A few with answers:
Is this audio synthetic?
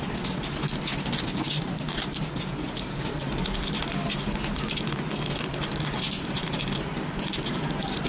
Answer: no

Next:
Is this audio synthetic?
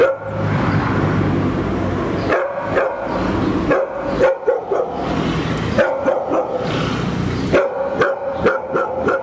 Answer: no